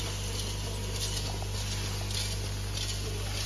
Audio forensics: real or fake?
real